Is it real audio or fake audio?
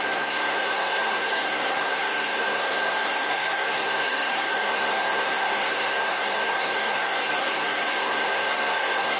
fake